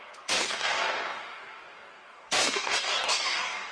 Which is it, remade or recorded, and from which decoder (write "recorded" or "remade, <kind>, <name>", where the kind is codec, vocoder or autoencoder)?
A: remade, codec, DAC